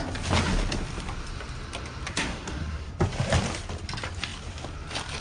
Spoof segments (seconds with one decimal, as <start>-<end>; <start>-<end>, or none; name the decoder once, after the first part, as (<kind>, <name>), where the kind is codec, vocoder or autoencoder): 2.1-2.9 (codec, SNAC)